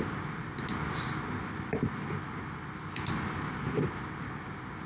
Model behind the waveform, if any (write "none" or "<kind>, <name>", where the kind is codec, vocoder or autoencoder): none